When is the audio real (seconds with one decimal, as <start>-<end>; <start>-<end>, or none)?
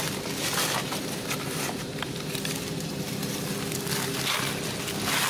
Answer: 0.0-0.8; 2.9-5.3